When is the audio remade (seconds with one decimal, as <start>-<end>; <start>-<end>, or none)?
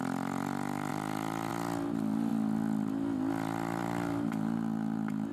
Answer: none